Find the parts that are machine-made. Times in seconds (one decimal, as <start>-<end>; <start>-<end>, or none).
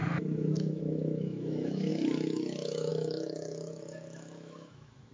0.0-5.1